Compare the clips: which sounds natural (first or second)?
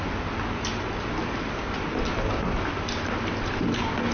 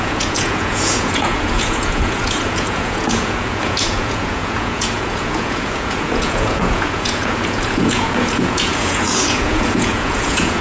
first